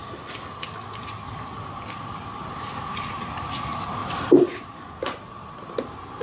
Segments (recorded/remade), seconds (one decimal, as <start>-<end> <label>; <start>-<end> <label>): 0.0-4.0 recorded; 4.0-4.9 remade; 4.9-6.2 recorded